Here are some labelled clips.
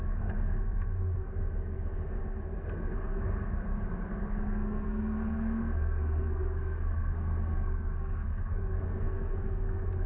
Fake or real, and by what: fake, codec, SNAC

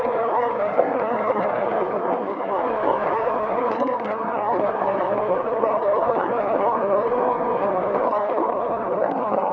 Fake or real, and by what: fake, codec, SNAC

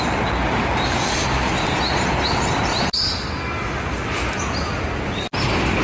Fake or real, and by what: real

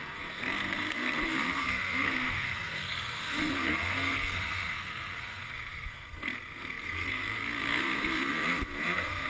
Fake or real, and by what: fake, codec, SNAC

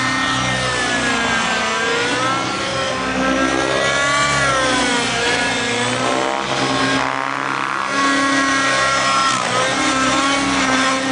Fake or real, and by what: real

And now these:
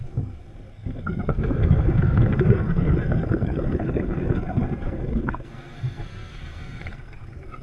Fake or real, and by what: fake, codec, SNAC